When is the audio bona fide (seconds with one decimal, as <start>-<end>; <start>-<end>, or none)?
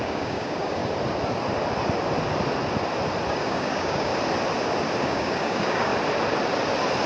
0.8-3.3; 4.1-5.0; 5.9-7.1